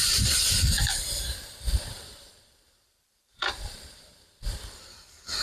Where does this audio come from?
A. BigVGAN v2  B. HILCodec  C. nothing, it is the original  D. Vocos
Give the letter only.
A